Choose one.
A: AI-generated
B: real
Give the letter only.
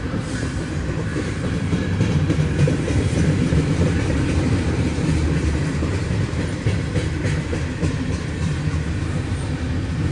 A